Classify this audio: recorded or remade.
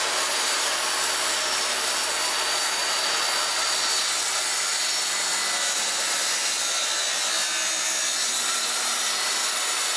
recorded